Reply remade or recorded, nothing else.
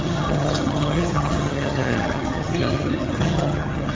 remade